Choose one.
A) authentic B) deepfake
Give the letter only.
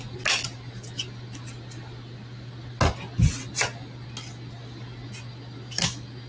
A